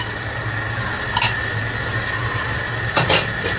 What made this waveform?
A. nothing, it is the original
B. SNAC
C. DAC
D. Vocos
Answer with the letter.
A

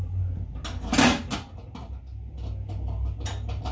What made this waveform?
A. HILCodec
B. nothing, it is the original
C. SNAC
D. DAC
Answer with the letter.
B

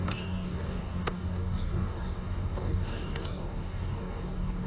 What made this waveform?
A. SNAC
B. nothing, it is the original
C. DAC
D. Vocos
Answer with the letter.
C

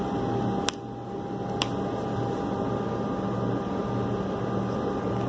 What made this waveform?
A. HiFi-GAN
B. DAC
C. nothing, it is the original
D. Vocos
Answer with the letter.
C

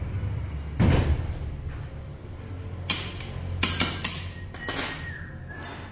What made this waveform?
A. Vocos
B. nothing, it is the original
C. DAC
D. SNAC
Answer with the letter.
B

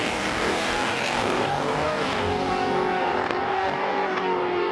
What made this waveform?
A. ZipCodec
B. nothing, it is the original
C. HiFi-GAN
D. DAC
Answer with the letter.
D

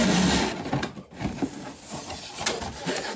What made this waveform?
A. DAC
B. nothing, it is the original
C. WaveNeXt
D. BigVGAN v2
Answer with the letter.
B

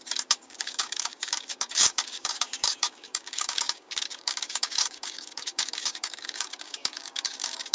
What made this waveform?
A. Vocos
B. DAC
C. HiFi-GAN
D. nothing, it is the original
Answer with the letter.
B